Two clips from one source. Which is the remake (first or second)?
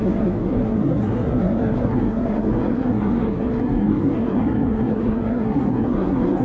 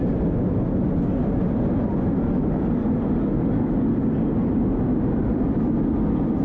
first